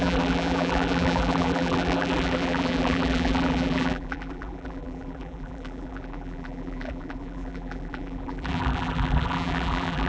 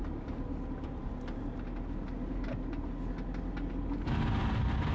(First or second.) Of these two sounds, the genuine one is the second